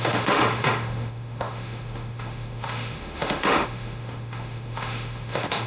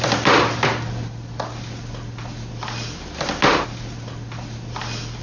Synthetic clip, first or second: first